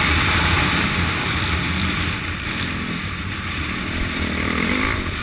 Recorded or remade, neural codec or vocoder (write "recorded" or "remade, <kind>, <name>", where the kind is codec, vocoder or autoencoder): recorded